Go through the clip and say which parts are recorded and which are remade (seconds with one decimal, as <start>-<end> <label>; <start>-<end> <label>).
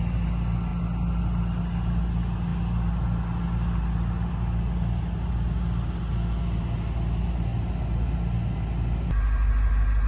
0.0-10.1 recorded